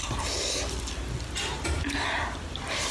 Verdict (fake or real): fake